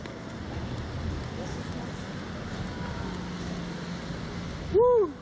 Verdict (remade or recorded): recorded